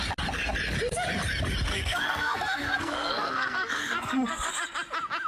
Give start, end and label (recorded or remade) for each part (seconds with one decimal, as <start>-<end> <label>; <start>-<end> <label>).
0.0-1.7 recorded; 1.7-4.5 remade; 4.5-5.3 recorded